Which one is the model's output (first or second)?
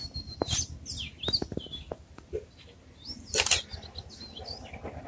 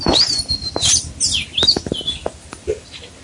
second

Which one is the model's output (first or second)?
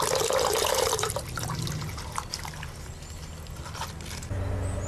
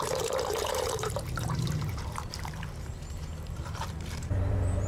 second